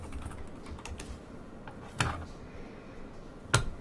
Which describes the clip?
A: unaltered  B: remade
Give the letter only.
A